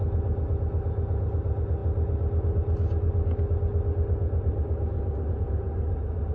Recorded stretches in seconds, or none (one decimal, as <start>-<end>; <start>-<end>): 0.0-6.3